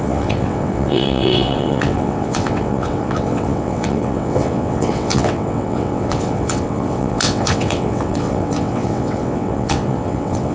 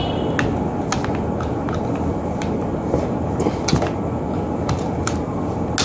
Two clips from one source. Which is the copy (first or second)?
first